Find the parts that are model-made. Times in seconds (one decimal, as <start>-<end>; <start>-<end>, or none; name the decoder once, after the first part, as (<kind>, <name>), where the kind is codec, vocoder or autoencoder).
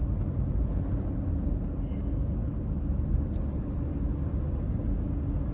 none